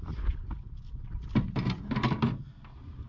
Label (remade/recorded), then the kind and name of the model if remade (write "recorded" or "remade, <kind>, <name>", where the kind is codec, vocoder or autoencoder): recorded